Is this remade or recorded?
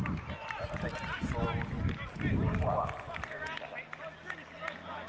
recorded